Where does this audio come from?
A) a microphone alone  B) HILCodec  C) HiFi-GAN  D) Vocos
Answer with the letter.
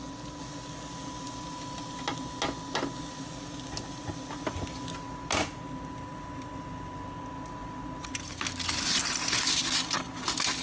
A